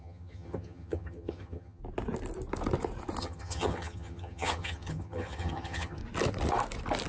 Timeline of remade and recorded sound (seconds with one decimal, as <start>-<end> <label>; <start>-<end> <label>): 0.0-1.8 remade; 1.8-3.2 recorded; 3.2-6.0 remade; 6.0-7.1 recorded